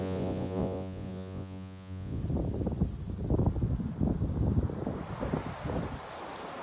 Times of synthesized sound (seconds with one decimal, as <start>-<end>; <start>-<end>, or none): 0.0-2.2